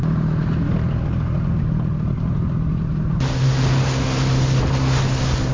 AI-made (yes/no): no